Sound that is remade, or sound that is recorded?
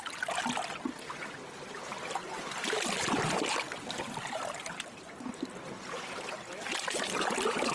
recorded